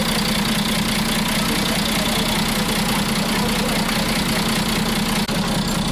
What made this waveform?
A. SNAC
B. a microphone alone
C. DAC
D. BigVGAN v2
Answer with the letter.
B